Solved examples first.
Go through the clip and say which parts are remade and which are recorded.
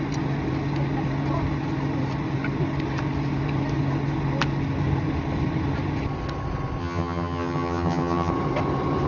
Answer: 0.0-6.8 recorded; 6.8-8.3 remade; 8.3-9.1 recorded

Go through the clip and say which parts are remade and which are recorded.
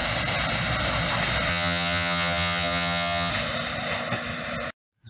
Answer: 0.0-1.5 recorded; 1.5-3.3 remade; 3.3-5.1 recorded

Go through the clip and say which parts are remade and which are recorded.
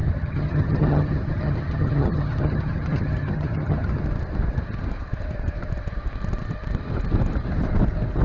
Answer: 0.0-4.0 remade; 4.0-8.2 recorded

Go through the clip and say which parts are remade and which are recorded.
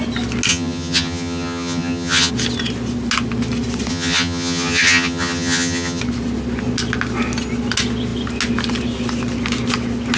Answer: 0.0-0.5 recorded; 0.5-2.3 remade; 2.3-3.9 recorded; 3.9-6.0 remade; 6.0-10.2 recorded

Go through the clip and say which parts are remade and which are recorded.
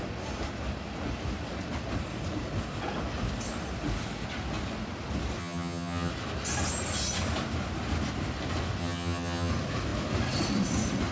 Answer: 0.0-5.4 recorded; 5.4-6.1 remade; 6.1-8.8 recorded; 8.8-9.5 remade; 9.5-11.1 recorded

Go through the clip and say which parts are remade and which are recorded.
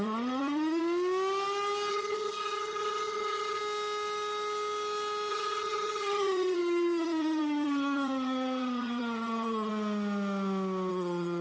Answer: 0.0-0.8 remade; 0.8-1.9 recorded; 1.9-3.6 remade; 3.6-5.3 recorded; 5.3-9.7 remade; 9.7-10.9 recorded; 10.9-11.4 remade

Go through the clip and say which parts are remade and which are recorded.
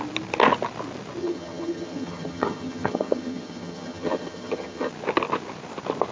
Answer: 0.0-1.2 recorded; 1.2-4.9 remade; 4.9-6.1 recorded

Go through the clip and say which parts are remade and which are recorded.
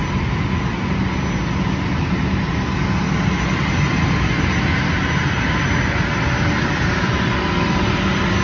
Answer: 0.0-8.4 recorded